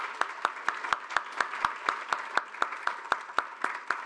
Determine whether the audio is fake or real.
real